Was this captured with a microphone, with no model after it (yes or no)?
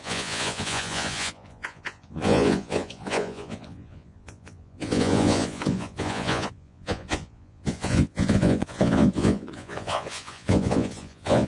no